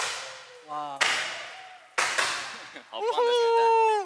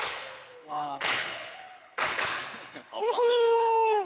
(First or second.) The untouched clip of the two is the first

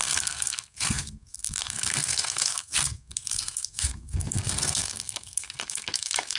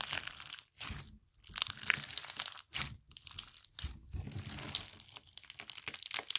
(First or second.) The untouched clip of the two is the second